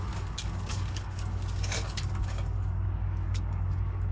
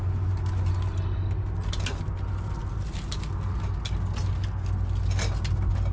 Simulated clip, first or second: first